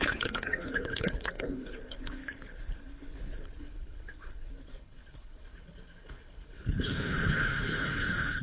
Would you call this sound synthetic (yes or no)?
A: yes